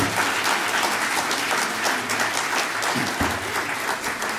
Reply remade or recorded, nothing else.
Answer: recorded